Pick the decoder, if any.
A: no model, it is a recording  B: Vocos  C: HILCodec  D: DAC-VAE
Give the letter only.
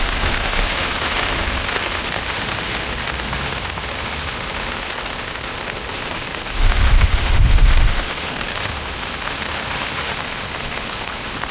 D